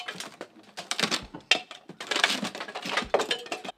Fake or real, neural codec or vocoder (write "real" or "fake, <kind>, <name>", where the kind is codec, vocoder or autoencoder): real